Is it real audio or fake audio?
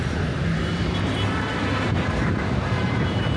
fake